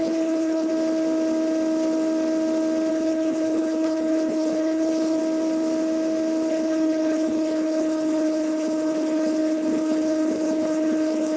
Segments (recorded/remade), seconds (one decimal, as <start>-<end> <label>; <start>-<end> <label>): 0.0-0.7 remade; 0.7-2.9 recorded; 2.9-5.2 remade; 5.2-6.5 recorded; 6.5-11.4 remade